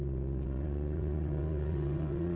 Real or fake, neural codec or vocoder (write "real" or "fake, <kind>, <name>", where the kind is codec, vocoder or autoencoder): fake, vocoder, WaveNeXt